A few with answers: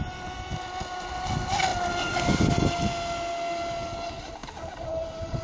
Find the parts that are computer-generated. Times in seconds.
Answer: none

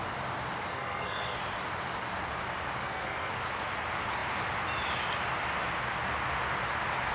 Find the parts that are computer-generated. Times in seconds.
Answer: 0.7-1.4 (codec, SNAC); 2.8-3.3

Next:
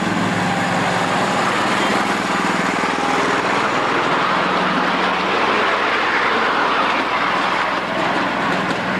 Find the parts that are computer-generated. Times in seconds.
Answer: none